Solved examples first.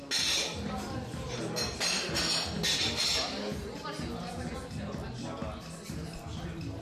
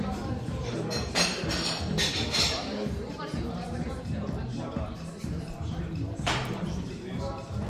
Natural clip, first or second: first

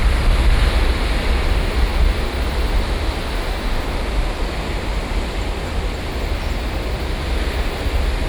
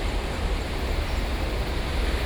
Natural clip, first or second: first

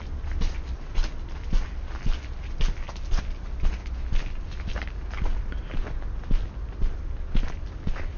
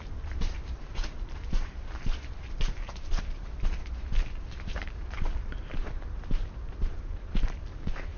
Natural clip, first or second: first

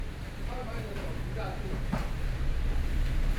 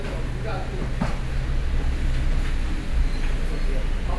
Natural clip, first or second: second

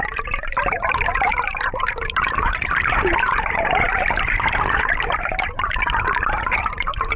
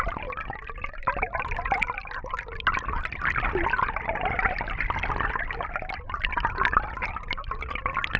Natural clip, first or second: second